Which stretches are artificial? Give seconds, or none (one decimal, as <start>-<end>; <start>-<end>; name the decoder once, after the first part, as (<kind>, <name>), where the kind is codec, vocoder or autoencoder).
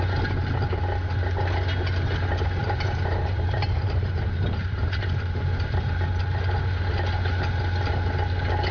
2.6-5.9 (vocoder, BigVGAN v2)